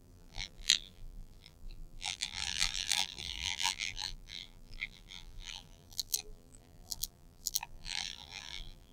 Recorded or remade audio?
remade